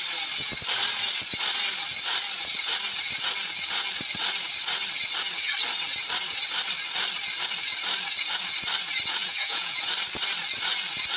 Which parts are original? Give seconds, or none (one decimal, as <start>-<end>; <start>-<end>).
0.0-9.2; 9.8-11.2